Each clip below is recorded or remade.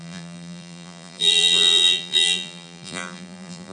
remade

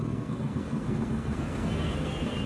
remade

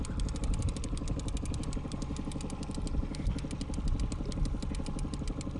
recorded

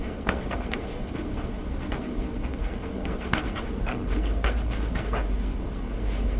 remade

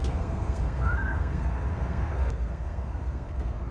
remade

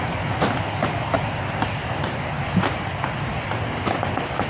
recorded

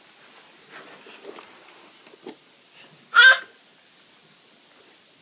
recorded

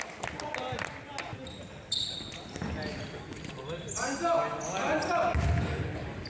recorded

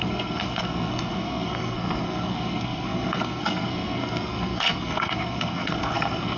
remade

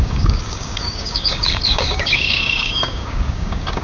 remade